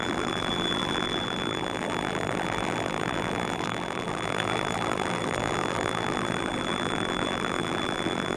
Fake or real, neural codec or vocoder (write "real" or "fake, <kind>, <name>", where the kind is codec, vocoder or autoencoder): fake, vocoder, BigVGAN v2